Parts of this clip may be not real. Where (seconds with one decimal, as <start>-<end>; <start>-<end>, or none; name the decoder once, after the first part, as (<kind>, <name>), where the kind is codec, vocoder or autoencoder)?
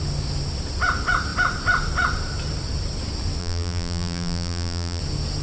3.4-5.0 (vocoder, BigVGAN v2)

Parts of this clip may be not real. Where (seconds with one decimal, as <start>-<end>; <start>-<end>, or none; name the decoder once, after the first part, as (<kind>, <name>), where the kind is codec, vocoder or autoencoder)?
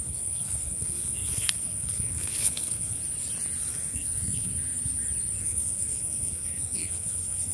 0.0-3.0 (codec, SNAC); 3.7-4.5; 5.4-7.5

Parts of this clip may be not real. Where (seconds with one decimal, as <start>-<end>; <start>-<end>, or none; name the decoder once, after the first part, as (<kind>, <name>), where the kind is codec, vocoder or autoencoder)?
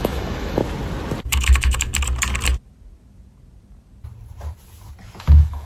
0.0-0.6 (autoencoder, DAC-VAE); 1.2-1.9; 5.2-5.7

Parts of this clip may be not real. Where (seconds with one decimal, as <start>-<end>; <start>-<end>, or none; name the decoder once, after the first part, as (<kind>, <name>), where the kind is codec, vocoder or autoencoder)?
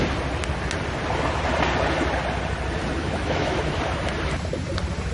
3.0-3.6 (autoencoder, DAC-VAE)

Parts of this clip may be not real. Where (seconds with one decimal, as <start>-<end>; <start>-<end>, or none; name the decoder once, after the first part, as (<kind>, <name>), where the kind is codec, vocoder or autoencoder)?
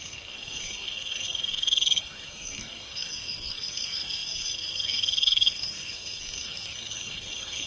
0.0-7.7 (codec, SNAC)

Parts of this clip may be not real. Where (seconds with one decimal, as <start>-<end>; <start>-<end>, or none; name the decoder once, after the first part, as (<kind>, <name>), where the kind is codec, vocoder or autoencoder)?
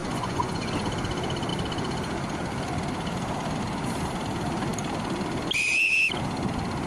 0.0-0.7 (vocoder, Vocos)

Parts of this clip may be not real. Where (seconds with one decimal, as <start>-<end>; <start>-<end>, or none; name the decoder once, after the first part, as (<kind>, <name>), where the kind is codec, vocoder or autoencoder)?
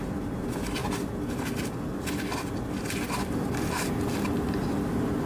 none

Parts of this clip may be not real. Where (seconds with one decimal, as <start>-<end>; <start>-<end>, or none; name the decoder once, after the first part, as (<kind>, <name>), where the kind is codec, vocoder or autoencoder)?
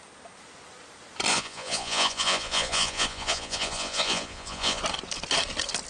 1.3-4.8 (vocoder, Vocos)